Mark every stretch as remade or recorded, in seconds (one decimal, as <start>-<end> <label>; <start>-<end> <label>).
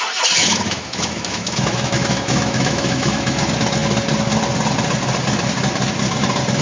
0.0-0.4 recorded; 0.4-3.4 remade; 3.4-6.6 recorded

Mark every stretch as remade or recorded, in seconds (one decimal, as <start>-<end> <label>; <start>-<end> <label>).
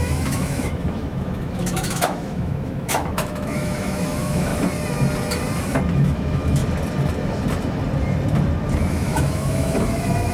0.0-4.5 remade; 4.5-5.9 recorded; 5.9-6.6 remade; 6.6-8.9 recorded; 8.9-10.3 remade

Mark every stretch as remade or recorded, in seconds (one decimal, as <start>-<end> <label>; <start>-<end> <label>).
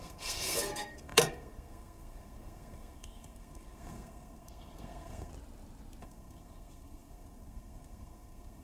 0.0-5.3 remade; 5.3-6.0 recorded; 6.0-8.6 remade